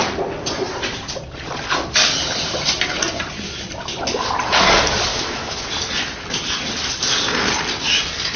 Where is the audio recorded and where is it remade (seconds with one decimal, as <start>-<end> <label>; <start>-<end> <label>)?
0.0-5.1 recorded; 5.1-5.7 remade; 5.7-8.4 recorded